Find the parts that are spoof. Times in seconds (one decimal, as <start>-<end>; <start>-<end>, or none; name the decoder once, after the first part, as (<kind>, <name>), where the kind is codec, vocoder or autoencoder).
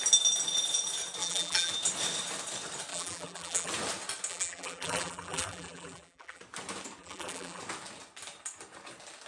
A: 1.2-1.7 (vocoder, BigVGAN v2); 2.9-3.7; 4.3-6.4; 7.0-7.6